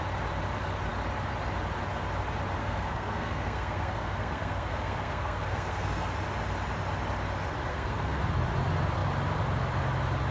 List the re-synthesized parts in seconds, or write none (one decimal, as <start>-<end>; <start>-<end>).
2.6-6.1; 7.7-8.2